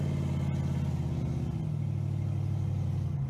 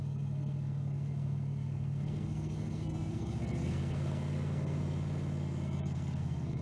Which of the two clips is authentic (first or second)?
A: first